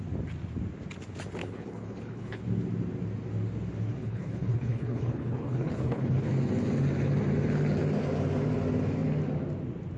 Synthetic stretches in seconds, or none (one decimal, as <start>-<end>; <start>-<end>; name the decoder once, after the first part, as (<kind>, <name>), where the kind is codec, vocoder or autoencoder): 1.4-2.4 (codec, HILCodec); 4.0-6.3